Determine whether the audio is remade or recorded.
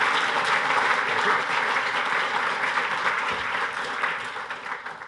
recorded